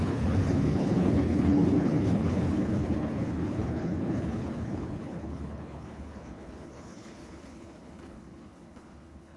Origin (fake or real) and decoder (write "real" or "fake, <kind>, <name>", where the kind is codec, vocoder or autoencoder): fake, codec, HILCodec